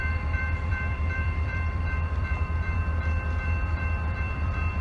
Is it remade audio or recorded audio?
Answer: remade